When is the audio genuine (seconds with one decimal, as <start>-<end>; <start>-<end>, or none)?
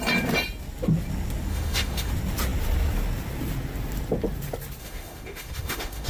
0.0-1.5; 2.1-4.8